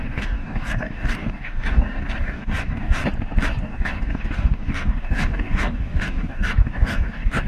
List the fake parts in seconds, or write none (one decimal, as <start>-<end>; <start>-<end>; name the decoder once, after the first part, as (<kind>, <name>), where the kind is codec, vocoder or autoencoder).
0.0-3.0 (codec, DAC); 3.6-7.5